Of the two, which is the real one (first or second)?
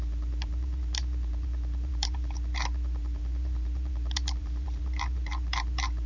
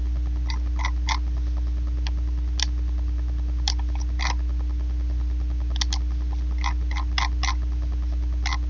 second